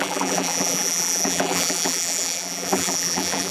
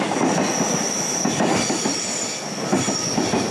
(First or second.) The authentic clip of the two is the second